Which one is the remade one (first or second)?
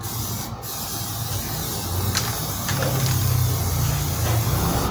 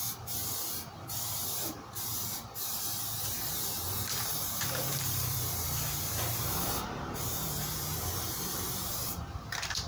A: second